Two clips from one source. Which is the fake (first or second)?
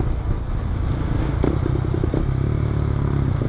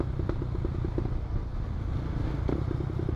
second